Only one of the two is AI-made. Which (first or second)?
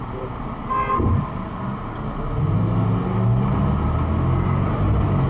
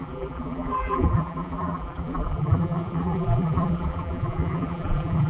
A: second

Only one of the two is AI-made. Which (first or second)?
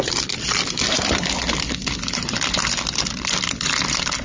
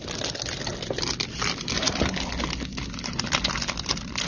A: first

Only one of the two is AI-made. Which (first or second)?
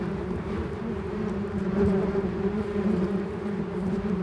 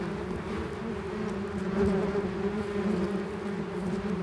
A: first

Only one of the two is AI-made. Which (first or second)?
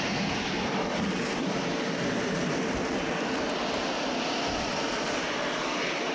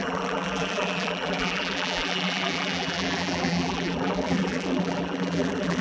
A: second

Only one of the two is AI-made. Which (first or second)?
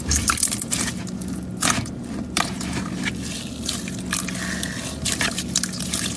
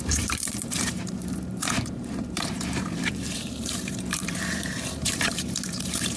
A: second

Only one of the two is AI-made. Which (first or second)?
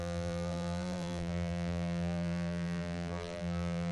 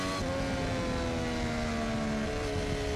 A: first